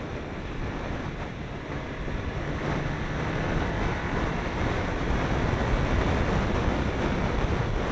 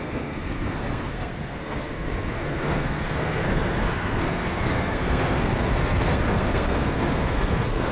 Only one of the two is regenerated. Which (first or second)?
second